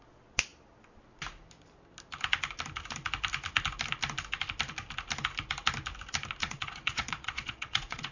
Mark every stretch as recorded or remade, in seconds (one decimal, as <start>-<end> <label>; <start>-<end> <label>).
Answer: 0.0-6.4 recorded; 6.4-8.1 remade